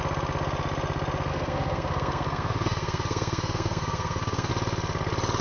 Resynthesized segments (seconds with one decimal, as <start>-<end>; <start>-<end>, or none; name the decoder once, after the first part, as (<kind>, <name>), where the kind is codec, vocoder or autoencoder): 1.3-4.5 (codec, SNAC)